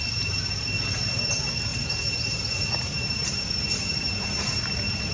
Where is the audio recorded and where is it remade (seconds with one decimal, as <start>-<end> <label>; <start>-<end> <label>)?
0.0-1.7 recorded; 1.7-5.1 remade